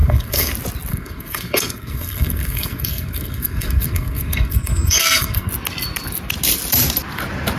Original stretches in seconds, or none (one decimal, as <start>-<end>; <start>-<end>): 0.5-0.9; 5.5-7.6